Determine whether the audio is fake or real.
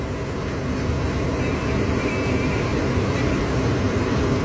real